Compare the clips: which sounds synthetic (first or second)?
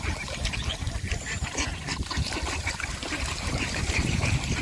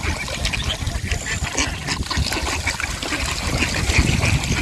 first